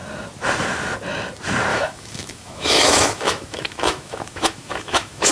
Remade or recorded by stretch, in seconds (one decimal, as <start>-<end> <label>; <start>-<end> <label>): 0.0-1.7 recorded; 1.7-5.3 remade